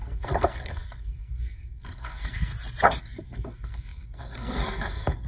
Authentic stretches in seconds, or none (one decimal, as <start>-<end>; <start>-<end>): 2.5-3.0